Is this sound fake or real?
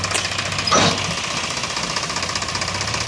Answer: real